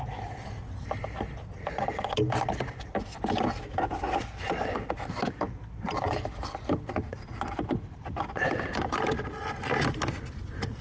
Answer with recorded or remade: recorded